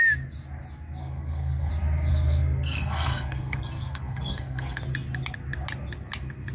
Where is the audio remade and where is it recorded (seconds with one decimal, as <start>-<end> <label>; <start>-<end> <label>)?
0.0-1.0 recorded; 1.0-1.7 remade; 1.7-2.1 recorded; 2.1-4.8 remade; 4.8-6.5 recorded